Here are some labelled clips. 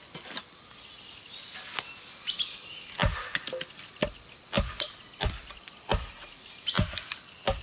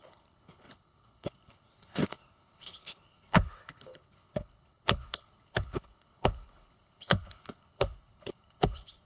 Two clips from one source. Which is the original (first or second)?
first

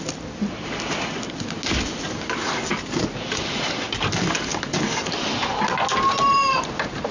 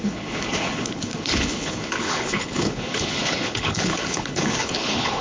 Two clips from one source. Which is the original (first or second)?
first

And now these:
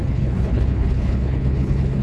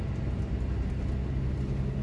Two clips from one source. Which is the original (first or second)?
second